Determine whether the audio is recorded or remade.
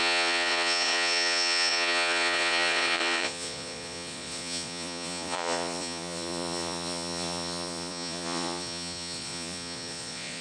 remade